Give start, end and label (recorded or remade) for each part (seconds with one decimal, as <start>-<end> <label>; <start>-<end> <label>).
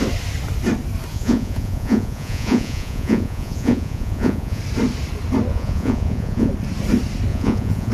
0.0-1.1 recorded; 1.1-4.6 remade; 4.6-5.5 recorded; 5.5-6.5 remade; 6.5-7.3 recorded; 7.3-7.9 remade